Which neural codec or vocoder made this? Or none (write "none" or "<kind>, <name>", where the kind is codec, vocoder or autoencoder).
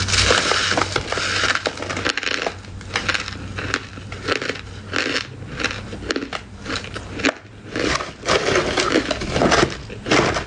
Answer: none